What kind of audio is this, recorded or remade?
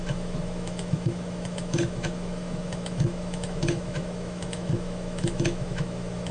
remade